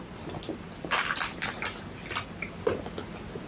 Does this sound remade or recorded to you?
recorded